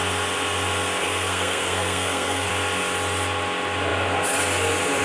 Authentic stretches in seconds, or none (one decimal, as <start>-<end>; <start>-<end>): 0.0-1.0; 2.5-5.0